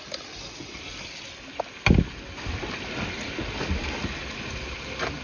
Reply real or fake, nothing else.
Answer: real